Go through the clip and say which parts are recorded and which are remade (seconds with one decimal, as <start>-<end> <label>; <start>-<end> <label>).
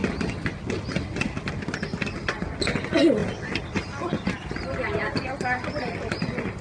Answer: 0.0-0.6 remade; 0.6-3.2 recorded; 3.2-4.4 remade; 4.4-6.6 recorded